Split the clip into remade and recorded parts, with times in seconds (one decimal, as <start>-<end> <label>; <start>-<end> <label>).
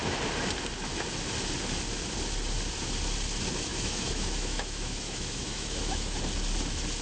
0.0-3.7 recorded; 3.7-6.2 remade; 6.2-7.0 recorded